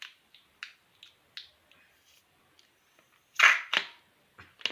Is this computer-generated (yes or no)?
no